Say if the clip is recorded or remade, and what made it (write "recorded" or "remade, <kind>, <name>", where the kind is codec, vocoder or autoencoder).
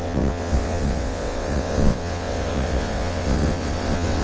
remade, vocoder, WaveNeXt